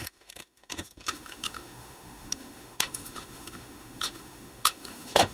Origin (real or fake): fake